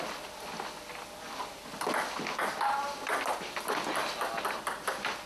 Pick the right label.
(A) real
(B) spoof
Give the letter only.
A